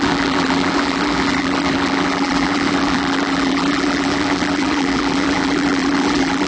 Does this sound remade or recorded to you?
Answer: remade